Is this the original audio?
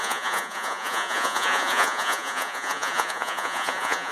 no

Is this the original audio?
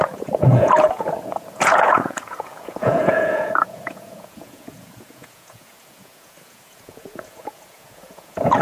no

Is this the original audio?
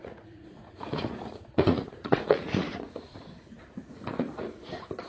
no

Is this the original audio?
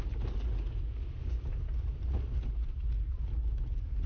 yes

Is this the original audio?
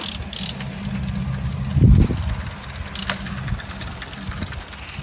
yes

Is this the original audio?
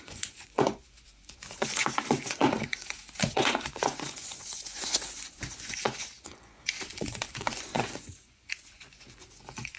no